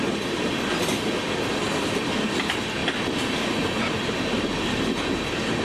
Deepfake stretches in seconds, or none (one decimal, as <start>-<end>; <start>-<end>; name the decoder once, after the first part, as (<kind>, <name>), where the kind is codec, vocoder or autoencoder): none